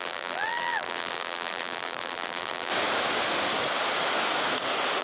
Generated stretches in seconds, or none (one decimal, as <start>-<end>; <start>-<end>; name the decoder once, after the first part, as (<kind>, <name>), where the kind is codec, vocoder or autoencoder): 0.0-2.7 (vocoder, BigVGAN v2)